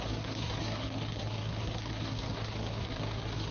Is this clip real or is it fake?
fake